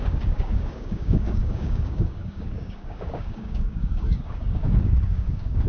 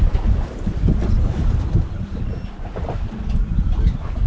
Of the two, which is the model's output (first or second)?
first